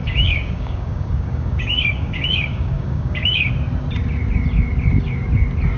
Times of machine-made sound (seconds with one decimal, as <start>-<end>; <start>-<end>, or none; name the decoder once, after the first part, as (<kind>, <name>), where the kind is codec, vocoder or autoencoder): 0.0-3.5 (codec, DAC)